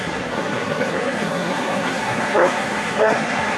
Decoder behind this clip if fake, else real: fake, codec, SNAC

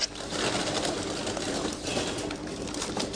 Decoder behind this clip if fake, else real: fake, vocoder, BigVGAN v2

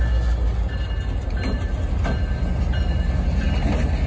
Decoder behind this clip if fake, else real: real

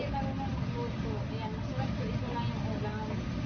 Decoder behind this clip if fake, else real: real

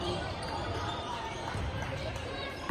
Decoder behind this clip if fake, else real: fake, vocoder, BigVGAN v2